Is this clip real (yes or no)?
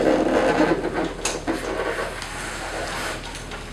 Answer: yes